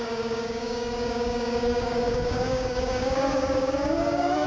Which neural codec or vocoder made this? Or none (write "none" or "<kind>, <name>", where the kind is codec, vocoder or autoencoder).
codec, DAC